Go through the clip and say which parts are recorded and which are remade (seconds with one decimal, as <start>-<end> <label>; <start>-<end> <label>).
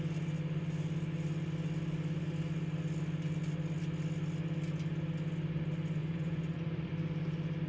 0.0-6.0 recorded; 6.0-6.9 remade; 6.9-7.7 recorded